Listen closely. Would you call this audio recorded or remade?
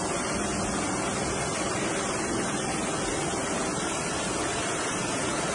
recorded